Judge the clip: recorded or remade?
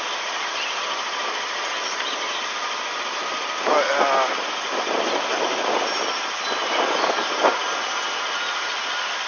recorded